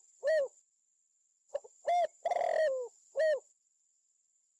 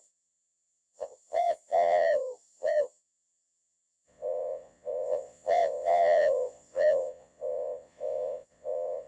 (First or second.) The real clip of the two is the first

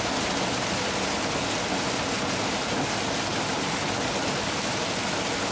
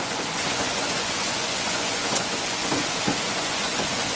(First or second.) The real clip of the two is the first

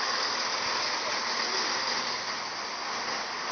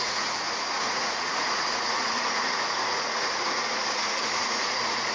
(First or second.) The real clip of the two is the first